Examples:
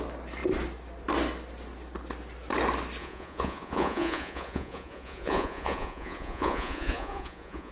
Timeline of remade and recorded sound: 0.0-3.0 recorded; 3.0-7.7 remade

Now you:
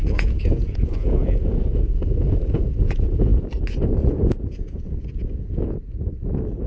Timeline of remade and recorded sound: 0.0-3.3 remade; 3.3-4.3 recorded; 4.3-6.7 remade

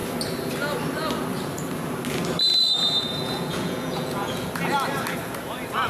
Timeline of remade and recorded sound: 0.0-2.5 recorded; 2.5-4.5 remade; 4.5-5.9 recorded

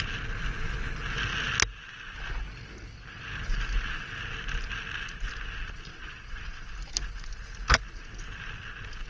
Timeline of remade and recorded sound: 0.0-5.9 recorded; 5.9-6.7 remade; 6.7-9.1 recorded

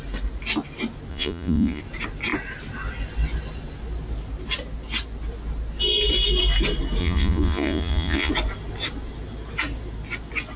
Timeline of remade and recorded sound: 0.0-1.1 recorded; 1.1-1.8 remade; 1.8-7.0 recorded; 7.0-8.3 remade; 8.3-10.6 recorded

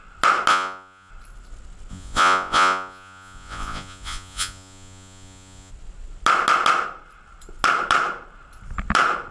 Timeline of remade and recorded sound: 0.0-0.5 recorded; 0.5-1.1 remade; 1.1-1.9 recorded; 1.9-5.7 remade; 5.7-9.3 recorded